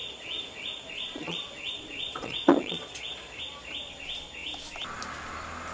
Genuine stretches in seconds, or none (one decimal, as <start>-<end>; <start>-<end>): 3.4-5.7